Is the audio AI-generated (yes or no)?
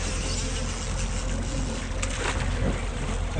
no